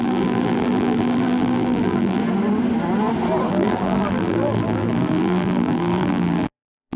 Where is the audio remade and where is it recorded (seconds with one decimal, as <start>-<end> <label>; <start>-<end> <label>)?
0.0-2.2 remade; 2.2-3.5 recorded; 3.5-7.0 remade